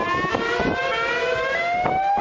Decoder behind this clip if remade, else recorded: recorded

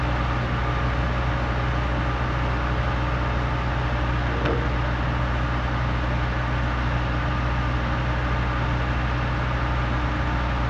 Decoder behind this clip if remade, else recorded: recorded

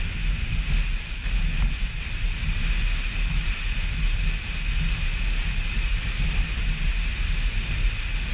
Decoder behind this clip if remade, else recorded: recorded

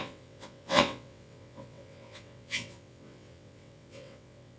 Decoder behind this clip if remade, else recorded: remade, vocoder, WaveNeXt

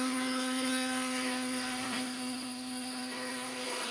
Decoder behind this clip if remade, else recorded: remade, codec, SNAC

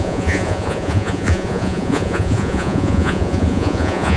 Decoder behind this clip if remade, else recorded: remade, vocoder, Vocos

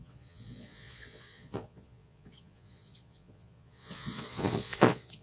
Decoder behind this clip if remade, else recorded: remade, vocoder, Vocos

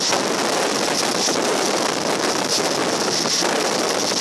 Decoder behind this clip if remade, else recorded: recorded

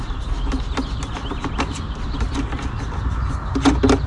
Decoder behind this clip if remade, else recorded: recorded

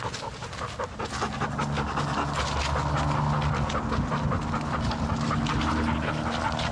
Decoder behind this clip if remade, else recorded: recorded